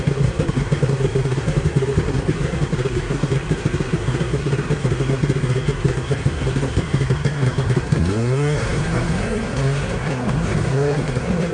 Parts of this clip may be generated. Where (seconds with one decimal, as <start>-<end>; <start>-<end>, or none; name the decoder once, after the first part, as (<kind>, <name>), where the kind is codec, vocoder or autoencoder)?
0.0-11.5 (codec, SNAC)